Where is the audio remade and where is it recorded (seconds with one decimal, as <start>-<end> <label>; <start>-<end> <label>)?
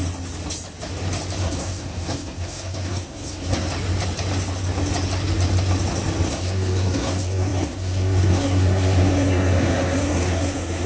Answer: 0.0-1.4 recorded; 1.4-3.7 remade; 3.7-6.3 recorded; 6.3-10.9 remade